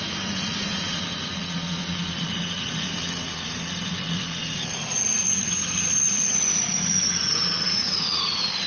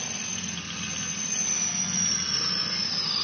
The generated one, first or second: first